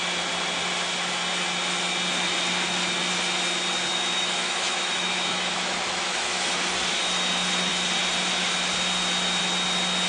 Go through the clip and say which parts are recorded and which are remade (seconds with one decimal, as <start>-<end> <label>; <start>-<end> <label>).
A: 0.0-3.9 recorded; 3.9-6.5 remade; 6.5-10.1 recorded